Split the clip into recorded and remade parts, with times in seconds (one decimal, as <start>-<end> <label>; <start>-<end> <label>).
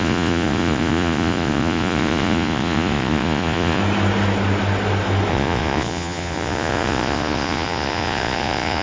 0.0-3.8 remade; 3.8-5.3 recorded; 5.3-8.8 remade